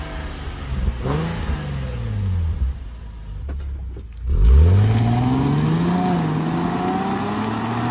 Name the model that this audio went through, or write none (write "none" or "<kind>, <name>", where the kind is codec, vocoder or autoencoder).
none